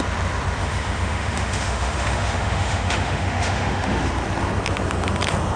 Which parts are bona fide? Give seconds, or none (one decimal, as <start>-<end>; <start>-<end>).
0.0-0.6; 4.0-5.6